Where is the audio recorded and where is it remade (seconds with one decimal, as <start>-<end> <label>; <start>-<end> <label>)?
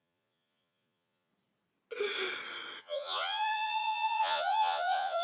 0.0-1.3 remade; 1.3-2.8 recorded; 2.8-5.2 remade